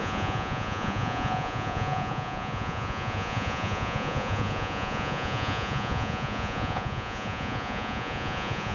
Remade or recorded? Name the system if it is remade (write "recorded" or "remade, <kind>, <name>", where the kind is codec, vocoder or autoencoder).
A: remade, vocoder, Vocos